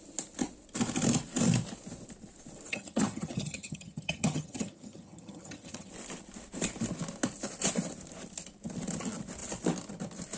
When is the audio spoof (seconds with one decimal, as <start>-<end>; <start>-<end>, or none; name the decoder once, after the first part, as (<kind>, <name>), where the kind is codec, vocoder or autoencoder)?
2.7-5.9 (vocoder, HiFi-GAN)